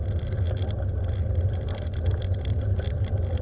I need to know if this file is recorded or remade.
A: recorded